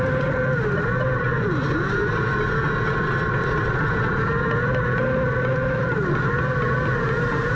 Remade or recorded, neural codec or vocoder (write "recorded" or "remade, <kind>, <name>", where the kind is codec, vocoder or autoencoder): recorded